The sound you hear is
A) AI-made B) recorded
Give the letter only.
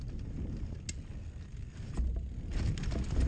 B